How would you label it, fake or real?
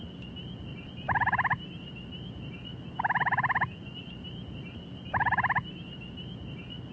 real